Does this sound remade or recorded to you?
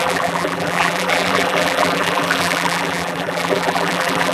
remade